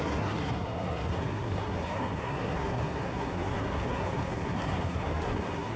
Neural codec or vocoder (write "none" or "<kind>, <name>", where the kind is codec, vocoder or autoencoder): codec, SNAC